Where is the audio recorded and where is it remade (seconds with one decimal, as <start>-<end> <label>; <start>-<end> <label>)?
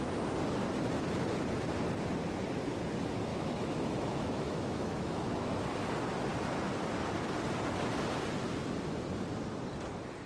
0.0-3.3 recorded; 3.3-5.5 remade; 5.5-10.3 recorded